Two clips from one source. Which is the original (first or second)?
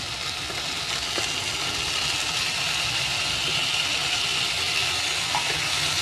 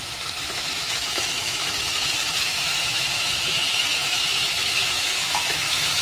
first